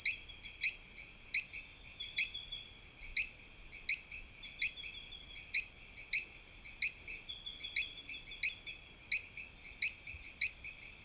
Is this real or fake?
real